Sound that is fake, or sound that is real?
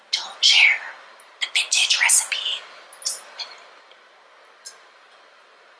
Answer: real